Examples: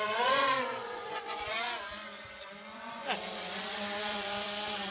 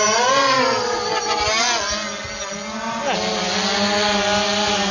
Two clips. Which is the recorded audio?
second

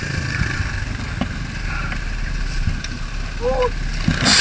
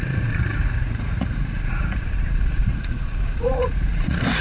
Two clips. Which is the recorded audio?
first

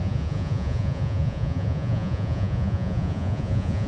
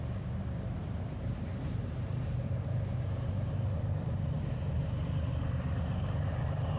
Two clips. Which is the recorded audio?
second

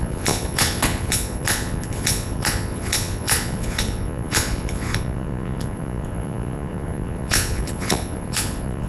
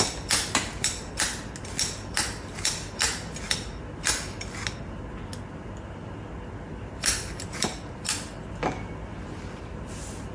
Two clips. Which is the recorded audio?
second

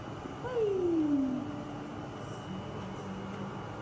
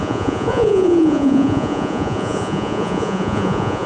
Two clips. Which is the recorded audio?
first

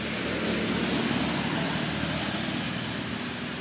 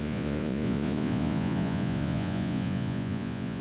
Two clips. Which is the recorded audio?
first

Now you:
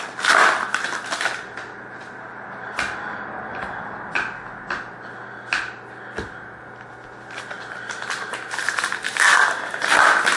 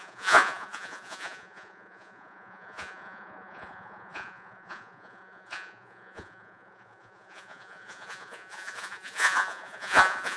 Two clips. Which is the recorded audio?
first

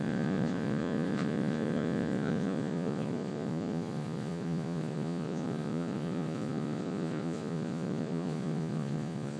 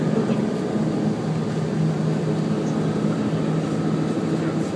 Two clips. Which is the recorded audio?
second